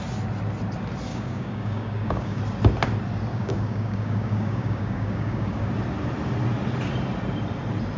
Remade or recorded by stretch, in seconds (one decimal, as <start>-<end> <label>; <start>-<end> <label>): 0.0-1.1 recorded; 1.1-2.4 remade; 2.4-3.3 recorded; 3.3-5.7 remade; 5.7-8.0 recorded